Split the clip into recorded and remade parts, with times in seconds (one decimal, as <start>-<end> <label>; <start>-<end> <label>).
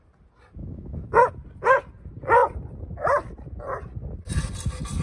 0.0-0.6 recorded; 0.6-1.3 remade; 1.3-5.0 recorded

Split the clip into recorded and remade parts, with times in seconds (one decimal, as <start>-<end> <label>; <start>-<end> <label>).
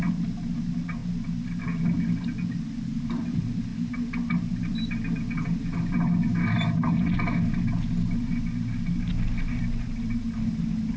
0.0-11.0 recorded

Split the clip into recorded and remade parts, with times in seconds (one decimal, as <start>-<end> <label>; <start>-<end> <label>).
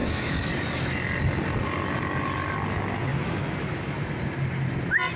0.0-0.5 remade; 0.5-3.1 recorded; 3.1-4.1 remade; 4.1-5.2 recorded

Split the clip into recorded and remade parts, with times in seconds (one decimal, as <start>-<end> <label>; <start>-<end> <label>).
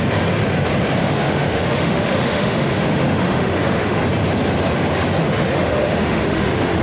0.0-1.0 recorded; 1.0-4.0 remade; 4.0-5.2 recorded; 5.2-6.8 remade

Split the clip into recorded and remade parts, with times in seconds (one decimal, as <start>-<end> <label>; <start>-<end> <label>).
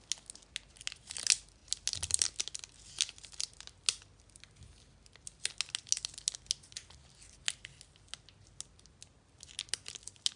0.0-10.4 recorded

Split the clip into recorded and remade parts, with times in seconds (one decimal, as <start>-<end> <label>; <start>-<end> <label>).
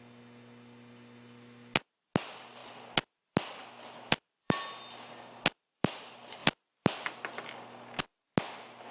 0.0-8.9 recorded